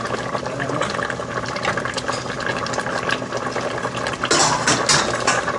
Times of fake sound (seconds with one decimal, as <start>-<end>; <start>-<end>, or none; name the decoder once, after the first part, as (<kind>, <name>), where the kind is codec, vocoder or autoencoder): none